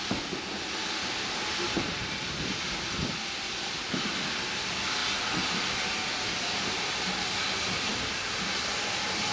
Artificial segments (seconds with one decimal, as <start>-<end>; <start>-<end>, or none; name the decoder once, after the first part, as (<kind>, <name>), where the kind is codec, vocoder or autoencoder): none